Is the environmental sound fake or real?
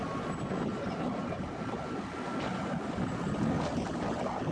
real